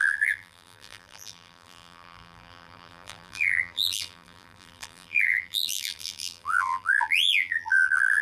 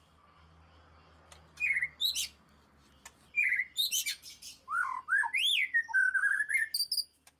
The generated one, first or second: first